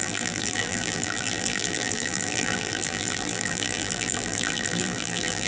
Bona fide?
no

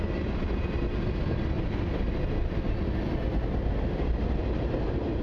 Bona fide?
yes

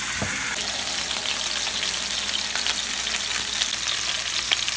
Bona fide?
yes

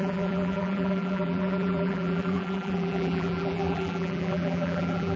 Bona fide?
no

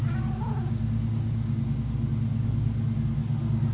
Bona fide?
yes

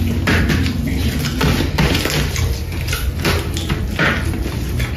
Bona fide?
yes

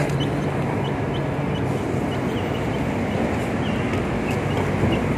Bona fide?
yes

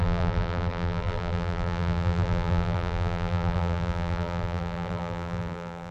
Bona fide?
no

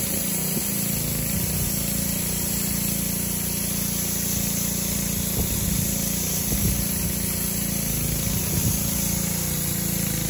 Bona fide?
yes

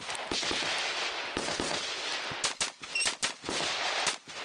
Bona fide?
yes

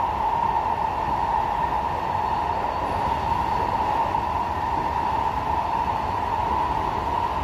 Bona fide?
yes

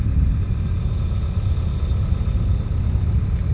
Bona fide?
yes